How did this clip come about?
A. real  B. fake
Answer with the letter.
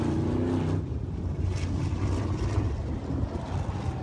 A